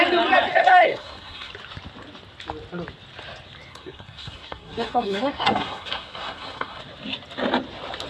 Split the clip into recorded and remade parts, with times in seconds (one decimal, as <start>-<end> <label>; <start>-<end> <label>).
0.0-0.5 recorded; 0.5-1.5 remade; 1.5-3.7 recorded; 3.7-6.8 remade; 6.8-8.1 recorded